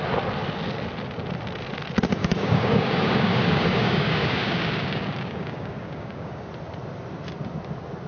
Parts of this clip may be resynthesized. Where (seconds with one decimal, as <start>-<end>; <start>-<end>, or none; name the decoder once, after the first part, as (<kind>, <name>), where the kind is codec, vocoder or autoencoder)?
2.2-6.5 (codec, DAC)